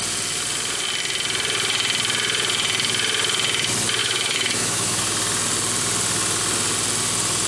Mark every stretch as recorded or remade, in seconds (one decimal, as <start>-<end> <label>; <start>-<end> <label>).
0.0-4.0 recorded; 4.0-5.0 remade; 5.0-7.5 recorded